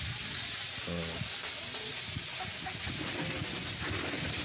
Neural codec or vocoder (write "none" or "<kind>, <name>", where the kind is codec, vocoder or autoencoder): none